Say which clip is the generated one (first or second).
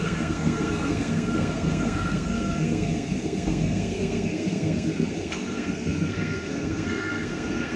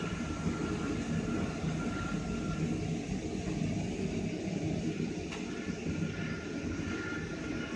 first